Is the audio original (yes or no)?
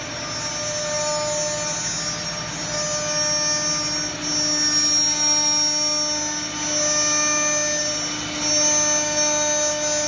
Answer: yes